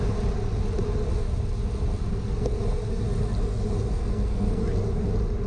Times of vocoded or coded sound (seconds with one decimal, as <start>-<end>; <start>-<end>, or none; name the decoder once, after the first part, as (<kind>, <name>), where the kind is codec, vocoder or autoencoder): 2.1-2.6 (codec, SNAC); 3.9-4.6